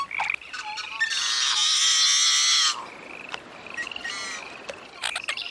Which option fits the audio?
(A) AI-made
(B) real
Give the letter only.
B